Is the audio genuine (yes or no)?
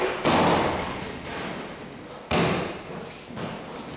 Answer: yes